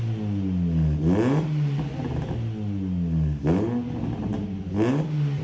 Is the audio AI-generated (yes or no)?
no